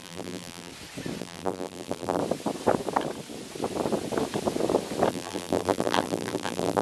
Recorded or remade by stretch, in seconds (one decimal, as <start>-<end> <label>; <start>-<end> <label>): 0.0-0.7 remade; 0.7-1.2 recorded; 1.2-2.2 remade; 2.2-5.1 recorded; 5.1-6.8 remade